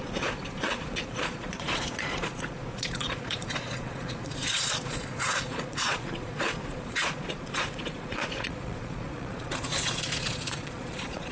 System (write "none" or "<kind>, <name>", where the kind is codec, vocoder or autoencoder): vocoder, Vocos